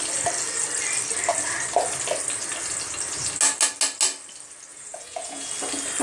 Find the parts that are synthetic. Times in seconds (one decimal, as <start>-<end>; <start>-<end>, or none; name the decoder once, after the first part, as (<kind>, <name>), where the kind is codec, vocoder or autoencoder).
4.7-5.5 (vocoder, Vocos)